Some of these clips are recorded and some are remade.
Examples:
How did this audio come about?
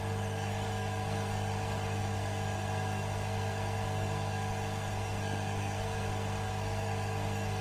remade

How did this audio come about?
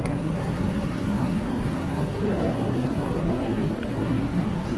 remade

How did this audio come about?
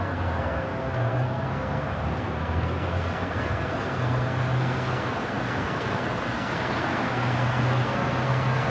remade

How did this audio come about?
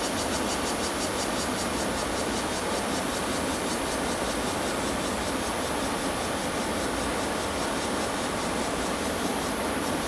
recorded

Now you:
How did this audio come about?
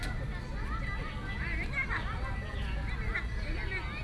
recorded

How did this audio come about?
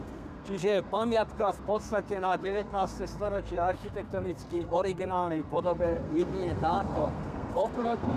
remade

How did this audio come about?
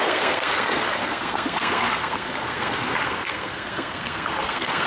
remade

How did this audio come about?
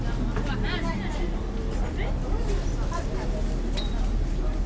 recorded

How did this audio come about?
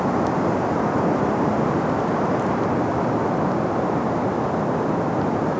recorded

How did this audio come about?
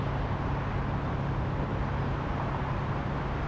recorded